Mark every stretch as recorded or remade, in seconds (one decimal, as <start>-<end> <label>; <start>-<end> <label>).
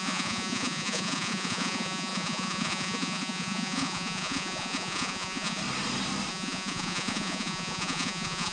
0.0-5.6 remade; 5.6-6.3 recorded; 6.3-8.5 remade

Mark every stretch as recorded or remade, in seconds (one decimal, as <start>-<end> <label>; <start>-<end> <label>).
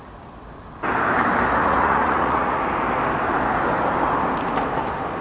0.0-1.6 recorded; 1.6-2.6 remade; 2.6-5.2 recorded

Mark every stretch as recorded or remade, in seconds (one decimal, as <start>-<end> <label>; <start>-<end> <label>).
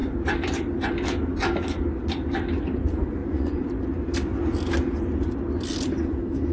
0.0-3.2 recorded; 3.2-3.7 remade; 3.7-6.5 recorded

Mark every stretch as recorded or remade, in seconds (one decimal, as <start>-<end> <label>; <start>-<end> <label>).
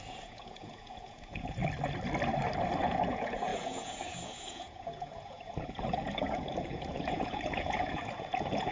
0.0-1.6 remade; 1.6-2.8 recorded; 2.8-8.7 remade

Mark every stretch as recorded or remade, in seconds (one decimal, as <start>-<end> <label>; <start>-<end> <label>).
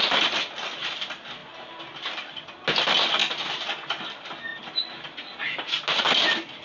0.0-6.6 recorded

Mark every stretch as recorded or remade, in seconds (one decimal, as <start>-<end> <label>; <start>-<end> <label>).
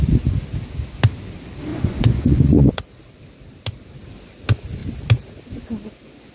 0.0-1.7 recorded; 1.7-2.8 remade; 2.8-6.3 recorded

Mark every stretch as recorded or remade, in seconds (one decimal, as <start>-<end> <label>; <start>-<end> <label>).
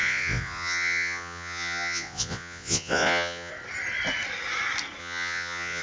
0.0-3.5 remade; 3.5-5.0 recorded; 5.0-5.8 remade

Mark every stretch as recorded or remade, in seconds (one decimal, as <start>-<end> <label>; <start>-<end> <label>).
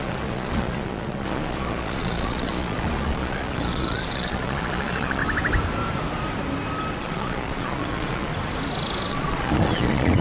0.0-5.2 remade; 5.2-7.0 recorded; 7.0-8.3 remade; 8.3-9.1 recorded; 9.1-10.2 remade